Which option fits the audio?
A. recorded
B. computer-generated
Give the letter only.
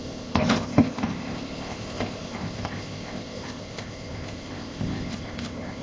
B